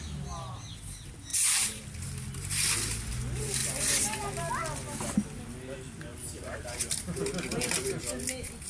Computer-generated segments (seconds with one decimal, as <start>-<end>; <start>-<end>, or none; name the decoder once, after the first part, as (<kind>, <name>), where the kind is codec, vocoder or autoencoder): 1.3-1.8 (vocoder, BigVGAN v2); 3.6-4.5; 6.1-7.2